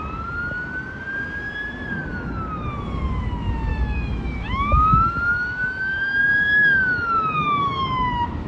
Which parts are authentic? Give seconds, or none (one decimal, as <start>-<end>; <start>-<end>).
0.0-3.7